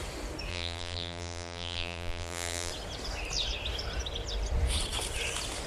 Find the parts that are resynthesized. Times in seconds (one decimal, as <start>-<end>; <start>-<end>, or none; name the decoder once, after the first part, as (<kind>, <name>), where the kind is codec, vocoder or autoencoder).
0.5-2.7 (vocoder, BigVGAN v2)